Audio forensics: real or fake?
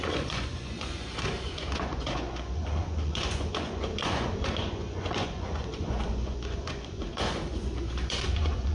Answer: fake